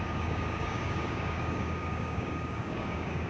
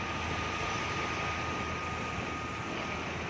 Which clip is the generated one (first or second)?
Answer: first